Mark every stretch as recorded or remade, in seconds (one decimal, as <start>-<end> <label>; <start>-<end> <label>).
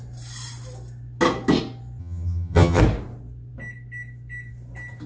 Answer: 0.0-2.0 recorded; 2.0-2.8 remade; 2.8-5.1 recorded